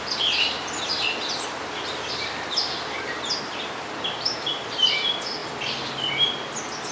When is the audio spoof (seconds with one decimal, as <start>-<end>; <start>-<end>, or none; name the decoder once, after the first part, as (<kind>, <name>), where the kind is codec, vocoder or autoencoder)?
none